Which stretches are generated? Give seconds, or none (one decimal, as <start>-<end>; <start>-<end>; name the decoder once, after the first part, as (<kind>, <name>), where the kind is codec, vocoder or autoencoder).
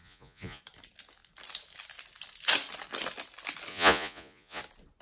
0.0-0.6 (vocoder, Vocos); 3.7-4.6